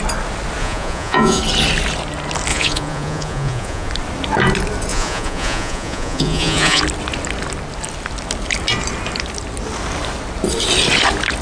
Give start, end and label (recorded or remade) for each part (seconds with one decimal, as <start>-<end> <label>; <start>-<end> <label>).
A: 0.0-0.6 recorded; 0.6-1.4 remade; 1.4-2.5 recorded; 2.5-3.9 remade; 3.9-4.9 recorded; 4.9-6.8 remade; 6.8-11.4 recorded